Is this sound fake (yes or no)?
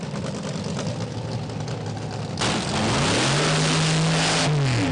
no